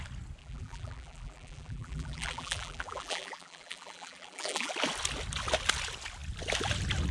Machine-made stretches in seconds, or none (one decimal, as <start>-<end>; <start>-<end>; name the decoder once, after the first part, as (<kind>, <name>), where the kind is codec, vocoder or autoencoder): 0.4-4.7 (vocoder, BigVGAN v2)